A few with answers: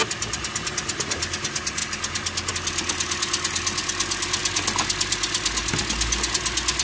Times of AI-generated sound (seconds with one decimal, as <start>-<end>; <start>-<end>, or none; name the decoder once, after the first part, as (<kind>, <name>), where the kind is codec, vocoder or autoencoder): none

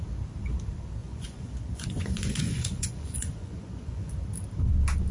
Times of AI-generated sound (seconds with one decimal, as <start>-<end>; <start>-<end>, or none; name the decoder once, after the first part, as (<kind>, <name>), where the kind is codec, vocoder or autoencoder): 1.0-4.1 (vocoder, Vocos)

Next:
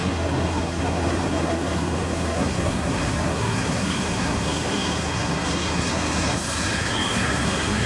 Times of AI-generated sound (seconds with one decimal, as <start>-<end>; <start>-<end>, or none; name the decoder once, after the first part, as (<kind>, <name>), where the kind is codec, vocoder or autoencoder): 0.0-7.9 (codec, SNAC)

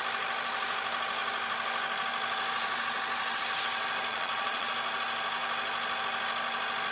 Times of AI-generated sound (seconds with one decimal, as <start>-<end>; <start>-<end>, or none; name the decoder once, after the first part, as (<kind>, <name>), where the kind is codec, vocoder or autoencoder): 4.1-4.7 (vocoder, Vocos)